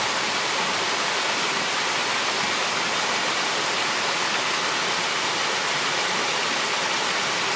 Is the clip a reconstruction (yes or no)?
no